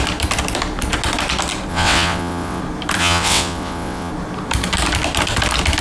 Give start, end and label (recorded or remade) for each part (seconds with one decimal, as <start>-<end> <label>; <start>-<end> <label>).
0.0-1.7 recorded; 1.7-2.6 remade; 2.6-3.0 recorded; 3.0-4.1 remade; 4.1-5.8 recorded